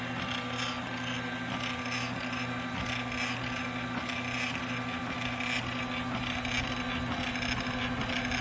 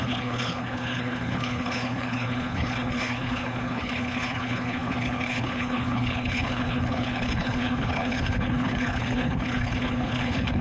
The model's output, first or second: second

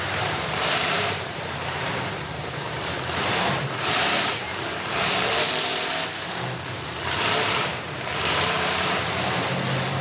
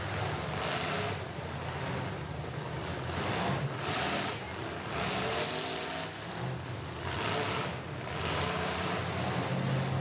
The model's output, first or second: first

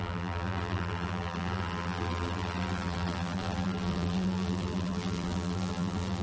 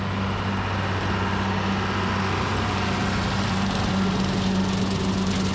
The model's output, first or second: first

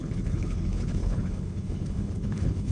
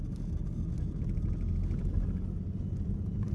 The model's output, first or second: first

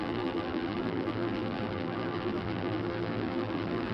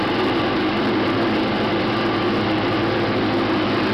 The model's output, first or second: first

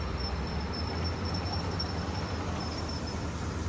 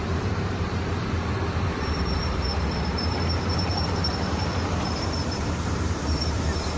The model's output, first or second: second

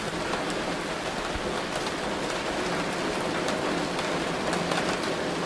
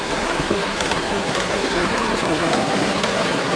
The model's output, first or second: second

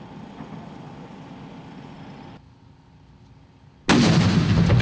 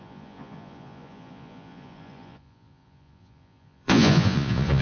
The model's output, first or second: second